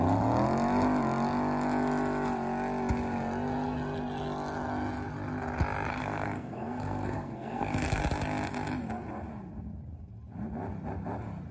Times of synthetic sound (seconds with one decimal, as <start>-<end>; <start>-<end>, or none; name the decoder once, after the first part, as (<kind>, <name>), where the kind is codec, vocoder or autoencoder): 5.9-8.0 (codec, SNAC)